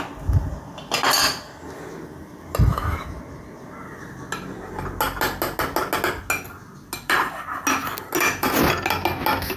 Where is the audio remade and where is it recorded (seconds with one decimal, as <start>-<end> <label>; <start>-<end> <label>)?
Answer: 0.0-2.7 recorded; 2.7-3.2 remade; 3.2-9.6 recorded